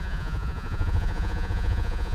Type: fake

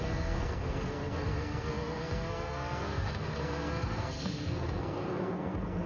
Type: fake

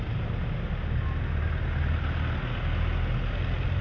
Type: real